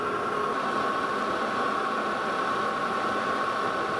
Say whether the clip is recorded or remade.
recorded